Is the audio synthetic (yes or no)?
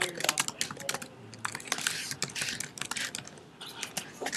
no